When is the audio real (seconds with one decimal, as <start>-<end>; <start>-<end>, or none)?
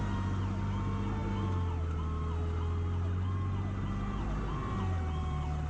0.0-5.7